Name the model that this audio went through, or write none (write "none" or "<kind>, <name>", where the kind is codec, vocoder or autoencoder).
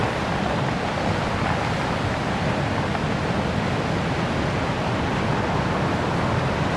none